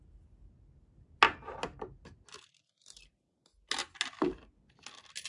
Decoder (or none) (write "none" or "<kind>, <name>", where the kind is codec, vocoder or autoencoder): none